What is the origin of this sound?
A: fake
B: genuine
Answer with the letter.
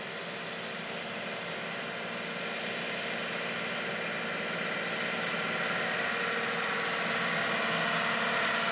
B